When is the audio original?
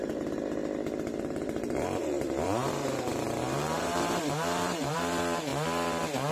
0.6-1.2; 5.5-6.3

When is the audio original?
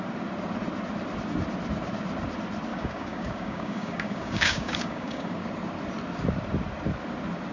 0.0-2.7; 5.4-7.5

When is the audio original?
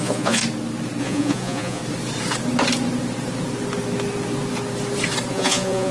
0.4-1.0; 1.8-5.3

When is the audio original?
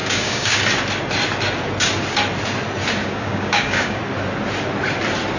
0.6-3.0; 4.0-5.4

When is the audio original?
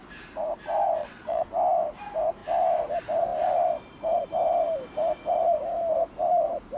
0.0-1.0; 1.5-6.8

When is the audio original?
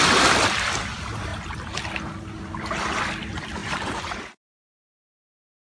0.0-3.6; 4.2-5.7